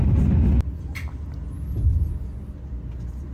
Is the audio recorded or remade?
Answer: recorded